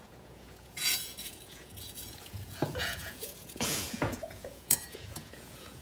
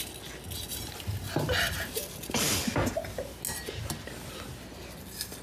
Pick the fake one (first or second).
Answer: first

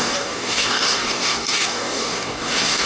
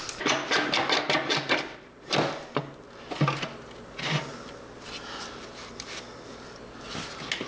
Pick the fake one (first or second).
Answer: first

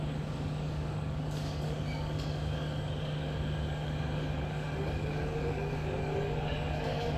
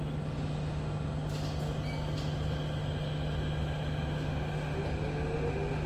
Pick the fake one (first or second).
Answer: first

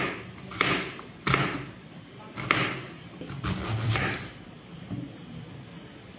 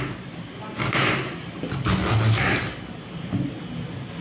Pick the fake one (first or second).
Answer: first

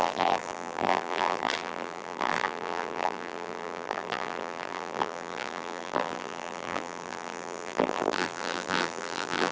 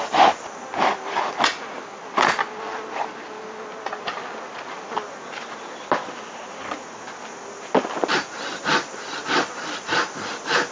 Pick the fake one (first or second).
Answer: first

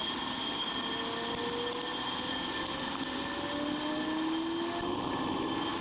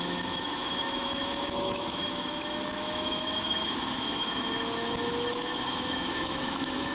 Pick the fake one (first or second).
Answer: second